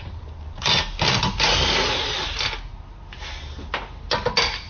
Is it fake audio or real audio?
real